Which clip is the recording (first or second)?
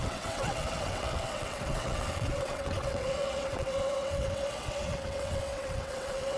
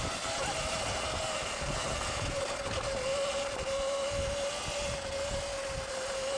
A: second